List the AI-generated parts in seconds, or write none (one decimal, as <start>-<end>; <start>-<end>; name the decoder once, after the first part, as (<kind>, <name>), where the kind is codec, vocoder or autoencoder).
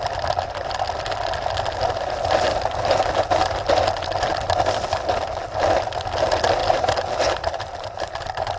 6.6-7.7 (vocoder, BigVGAN v2)